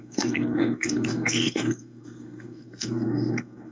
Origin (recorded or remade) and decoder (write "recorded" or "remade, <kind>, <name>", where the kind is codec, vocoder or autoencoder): remade, codec, SNAC